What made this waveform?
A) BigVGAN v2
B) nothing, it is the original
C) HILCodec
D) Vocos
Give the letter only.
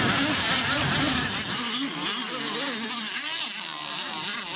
B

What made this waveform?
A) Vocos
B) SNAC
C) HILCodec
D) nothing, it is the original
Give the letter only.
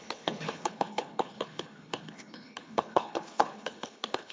C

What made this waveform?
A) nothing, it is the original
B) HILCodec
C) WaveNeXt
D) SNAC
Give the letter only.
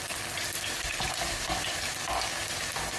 A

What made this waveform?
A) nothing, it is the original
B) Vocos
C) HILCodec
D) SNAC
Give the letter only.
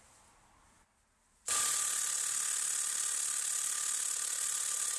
A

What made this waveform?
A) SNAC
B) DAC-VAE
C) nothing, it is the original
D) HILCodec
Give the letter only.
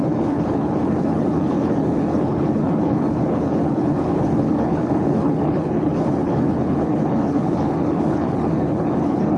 D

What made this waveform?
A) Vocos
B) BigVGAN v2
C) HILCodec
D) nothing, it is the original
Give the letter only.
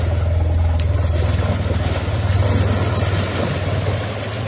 D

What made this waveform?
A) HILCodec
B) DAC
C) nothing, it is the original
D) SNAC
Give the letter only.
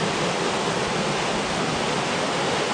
C